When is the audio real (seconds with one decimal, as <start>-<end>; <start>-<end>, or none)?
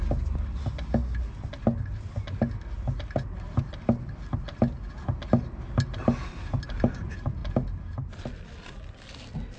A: 0.0-9.6